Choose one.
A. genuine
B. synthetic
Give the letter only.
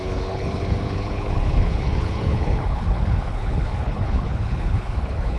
B